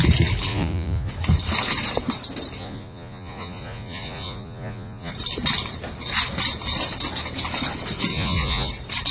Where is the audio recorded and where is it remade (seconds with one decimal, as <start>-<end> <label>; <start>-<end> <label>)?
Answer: 0.0-0.5 recorded; 0.5-1.1 remade; 1.1-2.6 recorded; 2.6-5.1 remade; 5.1-8.1 recorded; 8.1-8.7 remade; 8.7-9.1 recorded